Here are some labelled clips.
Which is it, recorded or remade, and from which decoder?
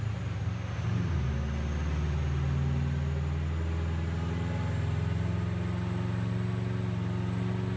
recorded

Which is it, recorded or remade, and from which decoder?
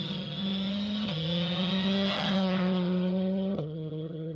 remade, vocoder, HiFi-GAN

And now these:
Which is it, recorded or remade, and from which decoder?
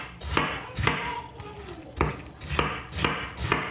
recorded